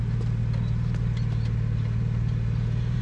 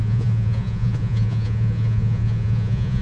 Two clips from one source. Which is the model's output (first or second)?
second